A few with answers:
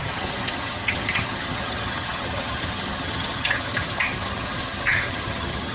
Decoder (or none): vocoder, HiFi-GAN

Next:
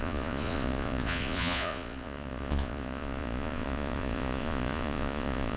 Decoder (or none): vocoder, Vocos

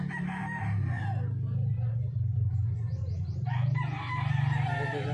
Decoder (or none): none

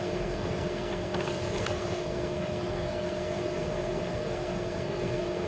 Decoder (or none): codec, SNAC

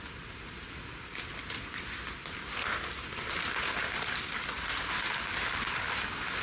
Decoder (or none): none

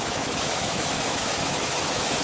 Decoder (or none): autoencoder, DAC-VAE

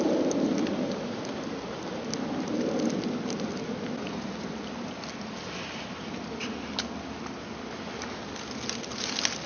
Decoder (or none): none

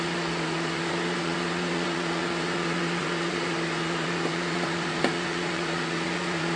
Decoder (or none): vocoder, Vocos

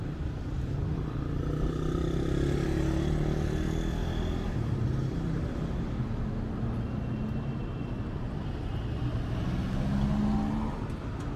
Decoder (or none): none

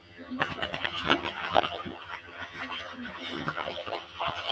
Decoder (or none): vocoder, HiFi-GAN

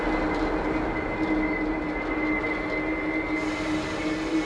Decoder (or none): none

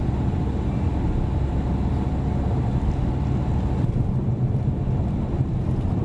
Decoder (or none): none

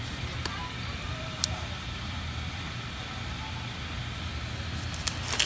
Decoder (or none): none